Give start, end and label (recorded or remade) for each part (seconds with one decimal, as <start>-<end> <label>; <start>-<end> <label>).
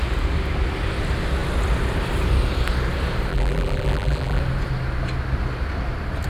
0.0-3.3 recorded; 3.3-4.4 remade; 4.4-6.3 recorded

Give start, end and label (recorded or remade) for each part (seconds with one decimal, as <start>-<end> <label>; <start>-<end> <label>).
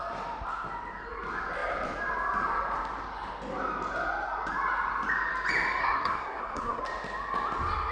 0.0-5.8 recorded; 5.8-6.8 remade; 6.8-7.9 recorded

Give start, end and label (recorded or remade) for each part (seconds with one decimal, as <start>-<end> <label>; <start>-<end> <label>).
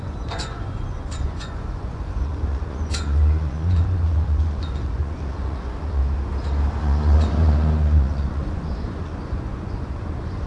0.0-6.0 remade; 6.0-6.8 recorded; 6.8-10.5 remade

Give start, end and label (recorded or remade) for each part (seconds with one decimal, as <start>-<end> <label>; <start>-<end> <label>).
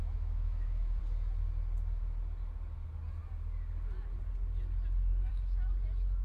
0.0-1.0 remade; 1.0-6.2 recorded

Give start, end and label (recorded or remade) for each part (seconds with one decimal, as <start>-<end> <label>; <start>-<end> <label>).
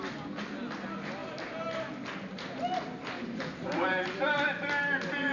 0.0-5.3 recorded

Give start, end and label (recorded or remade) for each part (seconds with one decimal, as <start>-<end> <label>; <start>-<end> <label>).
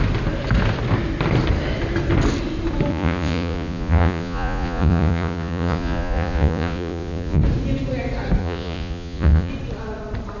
0.0-2.9 recorded; 2.9-7.4 remade; 7.4-8.4 recorded; 8.4-9.5 remade; 9.5-10.4 recorded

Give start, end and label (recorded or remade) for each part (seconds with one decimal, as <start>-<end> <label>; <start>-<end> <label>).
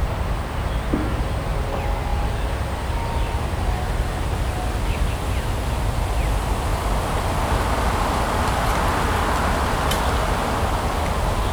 0.0-11.5 recorded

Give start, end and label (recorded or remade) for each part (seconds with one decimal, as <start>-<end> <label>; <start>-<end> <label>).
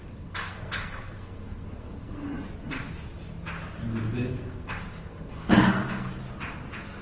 0.0-2.3 remade; 2.3-4.3 recorded; 4.3-6.1 remade; 6.1-7.0 recorded